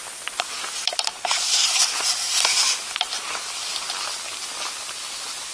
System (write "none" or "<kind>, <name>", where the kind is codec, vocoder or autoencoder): none